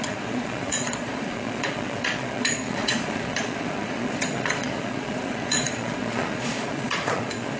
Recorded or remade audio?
remade